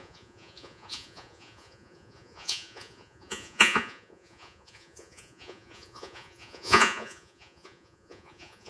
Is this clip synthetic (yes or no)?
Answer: yes